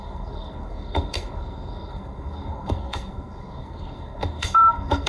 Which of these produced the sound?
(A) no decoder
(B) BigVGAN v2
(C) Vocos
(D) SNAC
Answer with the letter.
D